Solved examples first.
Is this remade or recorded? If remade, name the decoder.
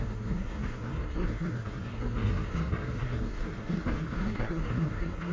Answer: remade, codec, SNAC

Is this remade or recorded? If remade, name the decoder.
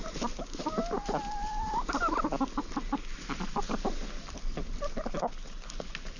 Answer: recorded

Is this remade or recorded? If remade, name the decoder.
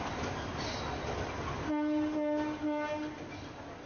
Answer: recorded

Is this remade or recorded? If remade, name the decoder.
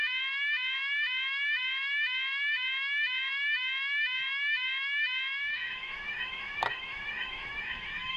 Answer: remade, autoencoder, DAC-VAE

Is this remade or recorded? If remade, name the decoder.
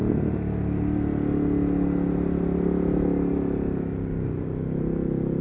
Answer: recorded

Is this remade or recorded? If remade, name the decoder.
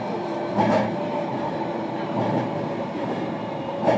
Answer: remade, vocoder, BigVGAN v2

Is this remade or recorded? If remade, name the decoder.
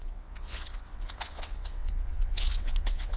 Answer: remade, vocoder, WaveNeXt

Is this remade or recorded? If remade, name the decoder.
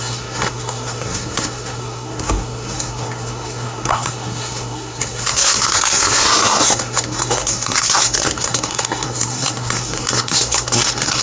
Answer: remade, codec, SNAC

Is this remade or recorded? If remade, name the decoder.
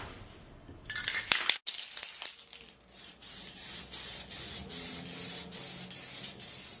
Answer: recorded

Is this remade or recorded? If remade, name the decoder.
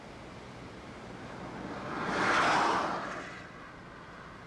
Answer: recorded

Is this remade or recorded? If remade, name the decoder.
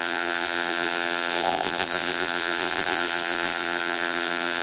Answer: remade, vocoder, BigVGAN v2